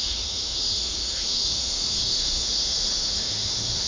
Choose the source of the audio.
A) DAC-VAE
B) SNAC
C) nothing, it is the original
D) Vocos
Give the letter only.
A